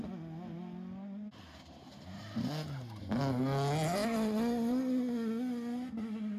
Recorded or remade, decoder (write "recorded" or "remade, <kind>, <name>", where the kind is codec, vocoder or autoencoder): recorded